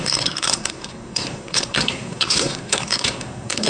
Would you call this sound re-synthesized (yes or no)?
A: yes